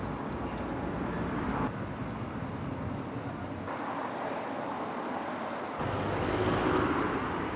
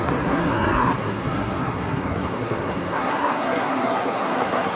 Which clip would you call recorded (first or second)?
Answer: first